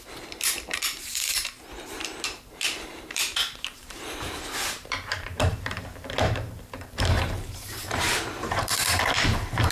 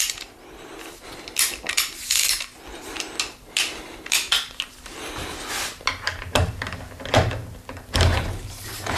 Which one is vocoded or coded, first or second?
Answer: first